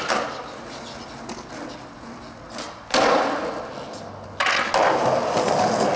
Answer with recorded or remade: recorded